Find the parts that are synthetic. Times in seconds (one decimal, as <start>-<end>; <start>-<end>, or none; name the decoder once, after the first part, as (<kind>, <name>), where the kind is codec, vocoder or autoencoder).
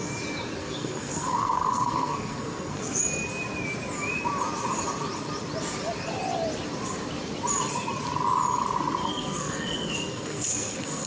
0.6-3.0 (codec, SNAC); 9.0-11.1